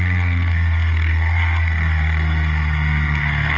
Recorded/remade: remade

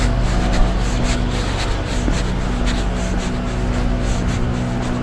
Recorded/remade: recorded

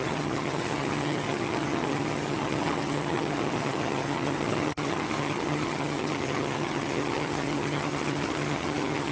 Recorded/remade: remade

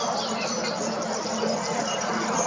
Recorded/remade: recorded